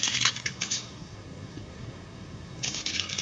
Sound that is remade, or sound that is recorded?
remade